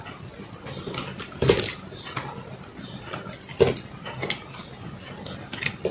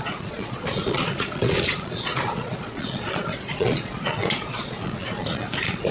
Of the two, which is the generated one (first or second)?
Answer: second